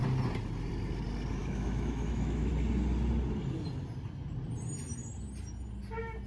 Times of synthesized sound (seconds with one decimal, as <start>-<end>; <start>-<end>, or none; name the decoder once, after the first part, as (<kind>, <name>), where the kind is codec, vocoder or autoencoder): 1.4-2.5 (autoencoder, DAC-VAE)